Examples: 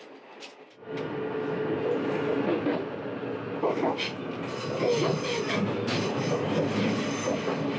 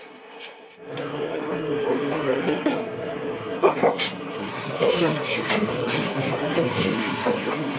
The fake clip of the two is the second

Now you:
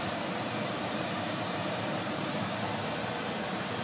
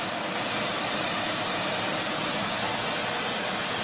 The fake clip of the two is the first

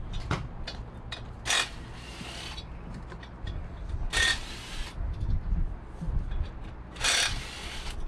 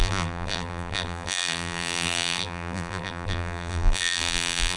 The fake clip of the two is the second